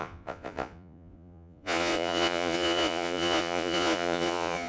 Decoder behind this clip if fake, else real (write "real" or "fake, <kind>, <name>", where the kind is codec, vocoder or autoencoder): fake, vocoder, Vocos